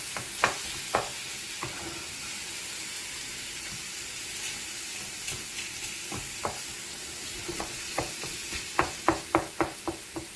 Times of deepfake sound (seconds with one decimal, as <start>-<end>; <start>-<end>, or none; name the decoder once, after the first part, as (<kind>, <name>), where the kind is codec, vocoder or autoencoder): 7.4-8.0 (vocoder, Vocos)